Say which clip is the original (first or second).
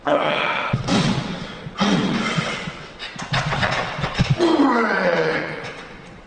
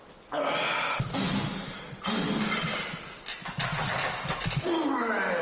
second